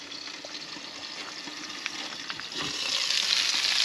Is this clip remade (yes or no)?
no